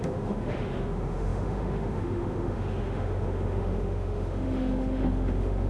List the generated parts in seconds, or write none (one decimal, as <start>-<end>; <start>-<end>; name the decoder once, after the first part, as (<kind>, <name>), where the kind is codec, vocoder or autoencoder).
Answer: 0.0-5.7 (autoencoder, DAC-VAE)